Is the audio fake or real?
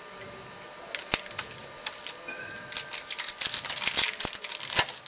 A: real